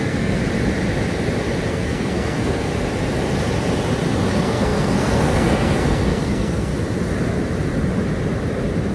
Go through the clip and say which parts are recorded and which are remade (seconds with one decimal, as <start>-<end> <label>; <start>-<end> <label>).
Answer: 0.0-0.4 remade; 0.4-1.7 recorded; 1.7-2.7 remade; 2.7-4.3 recorded; 4.3-6.7 remade; 6.7-8.9 recorded